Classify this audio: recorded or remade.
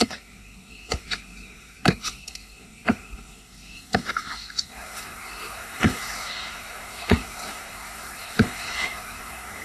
remade